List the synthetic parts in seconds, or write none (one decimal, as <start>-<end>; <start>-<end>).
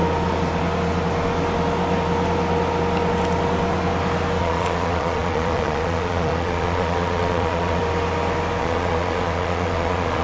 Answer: 4.4-7.8; 8.6-10.2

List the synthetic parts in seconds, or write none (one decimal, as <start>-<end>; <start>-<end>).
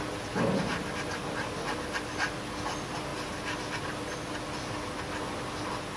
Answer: none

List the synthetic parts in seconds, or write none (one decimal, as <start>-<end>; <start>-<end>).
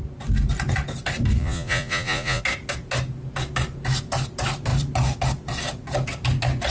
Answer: 1.4-2.4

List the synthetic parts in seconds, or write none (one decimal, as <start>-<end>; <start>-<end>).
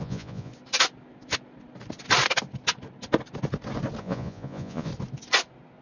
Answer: 0.0-0.5; 4.0-4.9